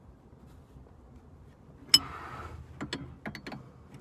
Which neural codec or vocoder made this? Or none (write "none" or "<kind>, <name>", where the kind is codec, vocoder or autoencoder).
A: none